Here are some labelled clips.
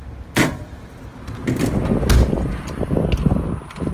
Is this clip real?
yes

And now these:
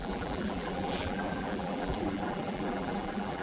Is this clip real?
no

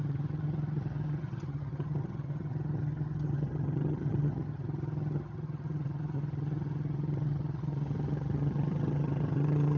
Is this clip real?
no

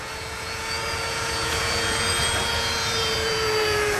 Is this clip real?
no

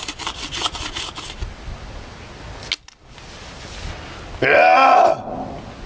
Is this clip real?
yes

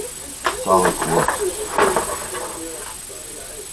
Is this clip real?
yes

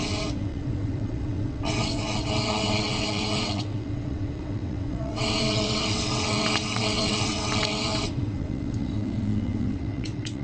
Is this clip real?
no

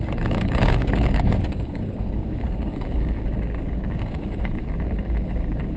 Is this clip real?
no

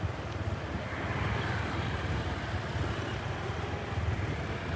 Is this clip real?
yes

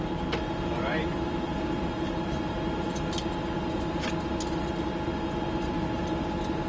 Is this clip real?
yes